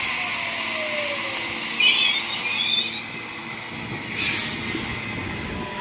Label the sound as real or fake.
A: real